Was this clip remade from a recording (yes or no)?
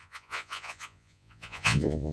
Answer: yes